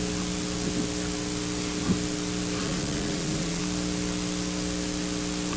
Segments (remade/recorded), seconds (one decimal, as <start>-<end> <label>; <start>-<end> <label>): 0.0-2.6 recorded; 2.6-3.6 remade; 3.6-5.6 recorded